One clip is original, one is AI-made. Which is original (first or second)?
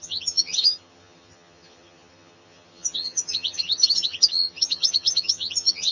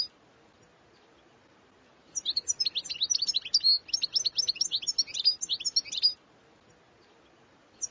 second